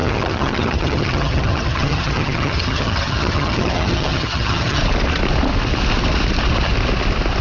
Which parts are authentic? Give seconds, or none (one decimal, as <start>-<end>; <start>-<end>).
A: 4.8-7.4